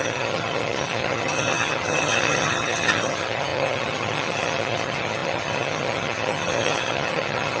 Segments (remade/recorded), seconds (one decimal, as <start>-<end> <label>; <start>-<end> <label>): 0.0-7.6 remade